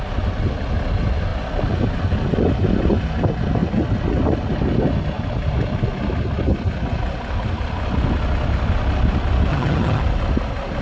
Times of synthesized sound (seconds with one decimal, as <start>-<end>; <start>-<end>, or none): 9.5-10.0